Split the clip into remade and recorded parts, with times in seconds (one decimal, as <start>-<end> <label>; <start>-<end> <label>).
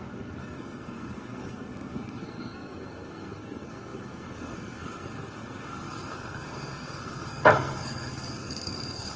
0.0-9.2 remade